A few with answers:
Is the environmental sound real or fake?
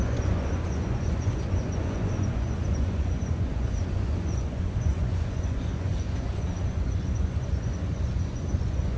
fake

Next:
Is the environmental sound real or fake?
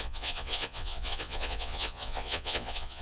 fake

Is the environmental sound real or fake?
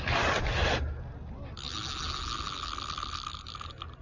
real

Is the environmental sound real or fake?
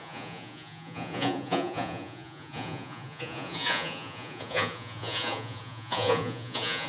fake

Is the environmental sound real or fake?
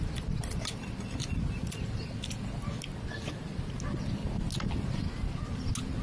real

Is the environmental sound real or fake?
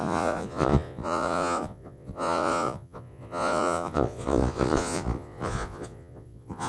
fake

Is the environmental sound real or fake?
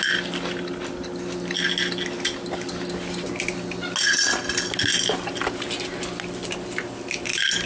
real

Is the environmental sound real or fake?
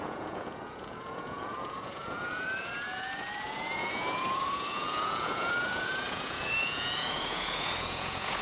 fake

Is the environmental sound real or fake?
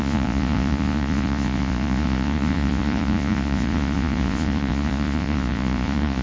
fake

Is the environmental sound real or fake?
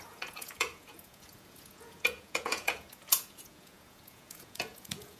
fake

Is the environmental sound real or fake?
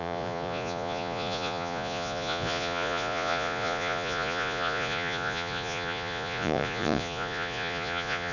fake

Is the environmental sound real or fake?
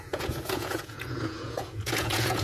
fake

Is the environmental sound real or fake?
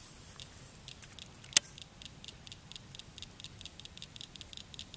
real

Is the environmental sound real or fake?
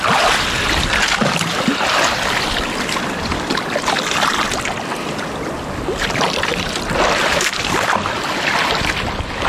real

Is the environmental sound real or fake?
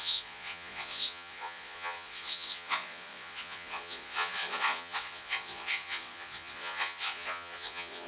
fake